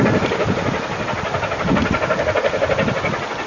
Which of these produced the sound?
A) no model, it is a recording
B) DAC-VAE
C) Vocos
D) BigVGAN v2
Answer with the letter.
A